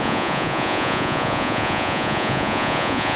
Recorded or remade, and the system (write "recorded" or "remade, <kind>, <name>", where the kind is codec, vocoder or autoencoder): remade, vocoder, Vocos